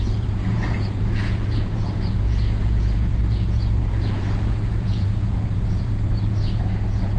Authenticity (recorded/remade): remade